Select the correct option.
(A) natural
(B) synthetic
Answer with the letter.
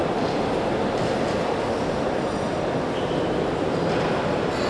A